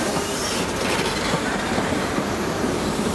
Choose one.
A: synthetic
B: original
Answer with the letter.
A